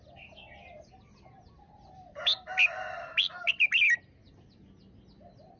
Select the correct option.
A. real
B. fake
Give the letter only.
A